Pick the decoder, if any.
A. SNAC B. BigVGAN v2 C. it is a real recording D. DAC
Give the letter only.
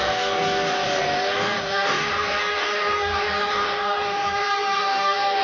D